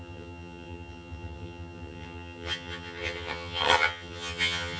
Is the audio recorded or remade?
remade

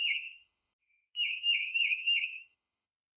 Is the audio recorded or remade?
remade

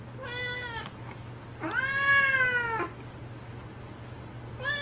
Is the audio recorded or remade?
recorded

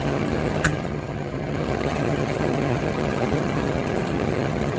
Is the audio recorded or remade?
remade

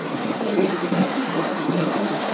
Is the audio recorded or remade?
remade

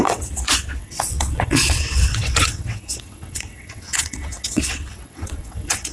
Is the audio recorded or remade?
remade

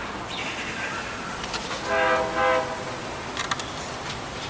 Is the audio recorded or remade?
recorded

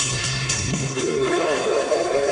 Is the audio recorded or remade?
remade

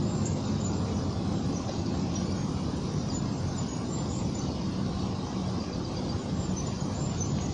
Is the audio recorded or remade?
remade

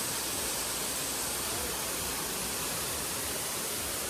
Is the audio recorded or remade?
recorded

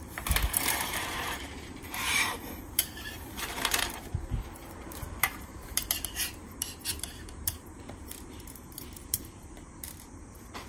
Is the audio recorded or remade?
remade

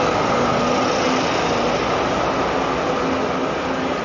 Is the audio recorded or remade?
recorded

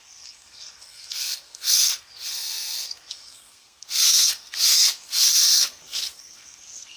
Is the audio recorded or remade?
remade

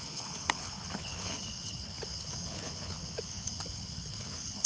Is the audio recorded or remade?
remade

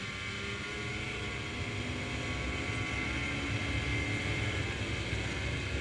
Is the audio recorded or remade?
recorded